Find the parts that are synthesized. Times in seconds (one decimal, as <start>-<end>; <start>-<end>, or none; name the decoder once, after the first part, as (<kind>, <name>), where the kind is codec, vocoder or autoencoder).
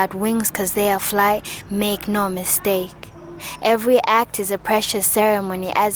none